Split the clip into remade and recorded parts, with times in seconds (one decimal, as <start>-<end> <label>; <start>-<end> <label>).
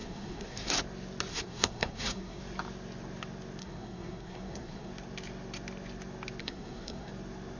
0.0-0.7 remade; 0.7-1.3 recorded; 1.3-2.4 remade; 2.4-3.6 recorded; 3.6-4.9 remade; 4.9-6.4 recorded; 6.4-7.1 remade; 7.1-7.6 recorded